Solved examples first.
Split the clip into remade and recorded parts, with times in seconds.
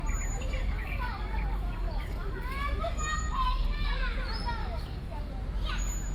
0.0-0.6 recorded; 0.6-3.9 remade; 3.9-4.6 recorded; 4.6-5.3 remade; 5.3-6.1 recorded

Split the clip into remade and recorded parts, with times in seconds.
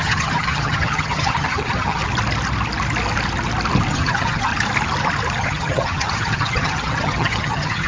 0.0-2.0 remade; 2.0-3.9 recorded; 3.9-4.5 remade; 4.5-5.4 recorded; 5.4-7.9 remade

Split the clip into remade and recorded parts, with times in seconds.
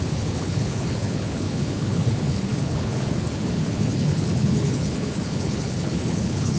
0.0-6.6 remade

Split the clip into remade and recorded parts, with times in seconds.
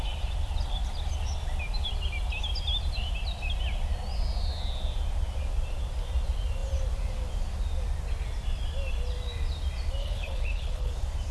0.0-10.0 recorded; 10.0-10.9 remade; 10.9-11.3 recorded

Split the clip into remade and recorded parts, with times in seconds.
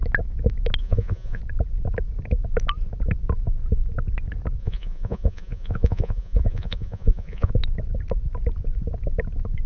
0.0-0.8 recorded; 0.8-1.4 remade; 1.4-4.6 recorded; 4.6-7.5 remade; 7.5-9.7 recorded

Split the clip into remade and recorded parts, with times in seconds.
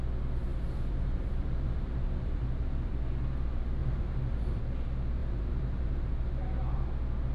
0.0-0.5 recorded; 0.5-2.9 remade; 2.9-3.8 recorded; 3.8-4.6 remade; 4.6-5.2 recorded; 5.2-6.1 remade; 6.1-7.3 recorded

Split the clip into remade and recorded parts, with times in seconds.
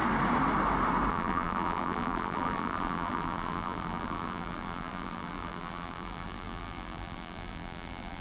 0.0-1.1 recorded; 1.1-8.2 remade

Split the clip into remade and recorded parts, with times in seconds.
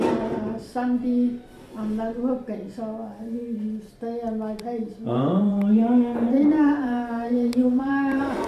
0.0-0.7 remade; 0.7-4.6 recorded; 4.6-8.5 remade